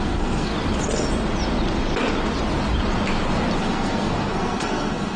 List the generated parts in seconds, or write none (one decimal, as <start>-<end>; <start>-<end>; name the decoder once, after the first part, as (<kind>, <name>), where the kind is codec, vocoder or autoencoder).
0.0-0.5 (codec, SNAC); 3.6-5.2